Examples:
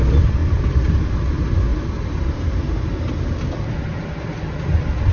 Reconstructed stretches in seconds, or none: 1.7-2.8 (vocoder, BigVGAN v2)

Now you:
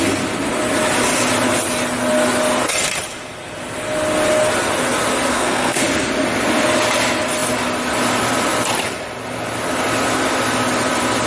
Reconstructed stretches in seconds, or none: 5.3-5.8 (codec, SNAC)

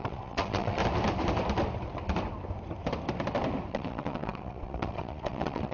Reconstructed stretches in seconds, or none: 0.0-0.8 (vocoder, WaveNeXt); 3.7-5.7

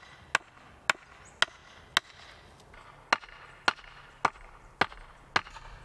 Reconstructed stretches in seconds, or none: none

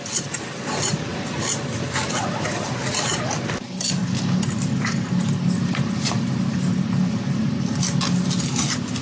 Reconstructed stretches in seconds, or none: none

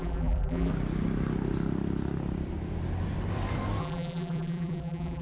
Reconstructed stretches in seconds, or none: 0.0-0.7 (vocoder, BigVGAN v2); 3.8-5.2

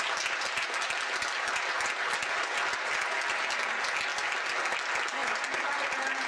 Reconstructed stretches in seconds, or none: none